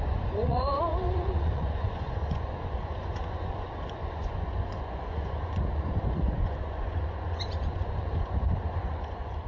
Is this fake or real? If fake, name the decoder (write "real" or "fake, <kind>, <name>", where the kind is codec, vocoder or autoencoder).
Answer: fake, vocoder, Vocos